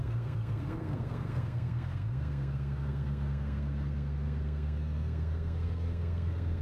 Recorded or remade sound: remade